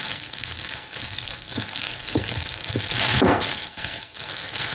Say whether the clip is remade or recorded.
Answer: remade